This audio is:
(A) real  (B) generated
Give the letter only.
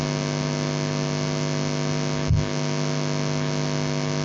A